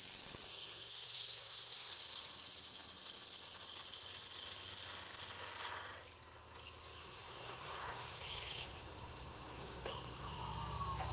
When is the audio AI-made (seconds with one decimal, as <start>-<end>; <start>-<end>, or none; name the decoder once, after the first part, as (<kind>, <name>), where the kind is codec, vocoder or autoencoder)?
0.5-1.9 (codec, SNAC); 7.0-10.4